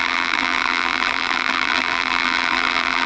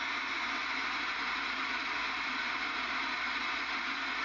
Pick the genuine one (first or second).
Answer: second